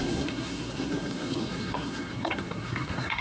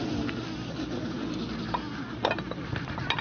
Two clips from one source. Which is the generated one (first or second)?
first